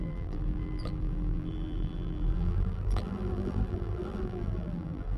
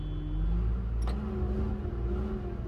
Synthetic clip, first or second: first